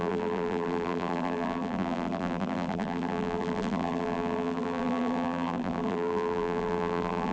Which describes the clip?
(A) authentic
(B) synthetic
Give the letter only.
B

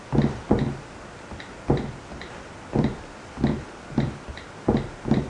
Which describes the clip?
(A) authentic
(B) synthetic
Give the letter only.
B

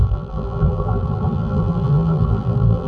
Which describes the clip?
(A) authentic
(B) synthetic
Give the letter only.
B